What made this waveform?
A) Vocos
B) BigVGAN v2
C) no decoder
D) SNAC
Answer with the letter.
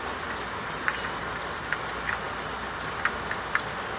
C